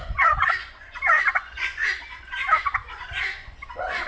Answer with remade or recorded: remade